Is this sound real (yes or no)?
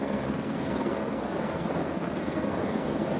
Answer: no